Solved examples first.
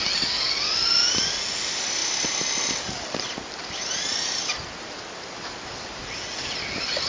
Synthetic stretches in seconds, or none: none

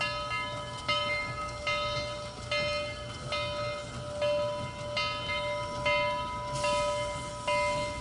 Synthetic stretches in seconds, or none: none

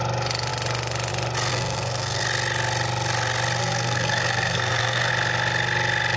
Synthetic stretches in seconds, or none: 1.5-2.2 (codec, SNAC); 3.6-5.1